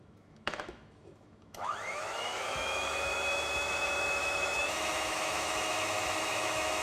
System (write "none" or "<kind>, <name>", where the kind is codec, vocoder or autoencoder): autoencoder, DAC-VAE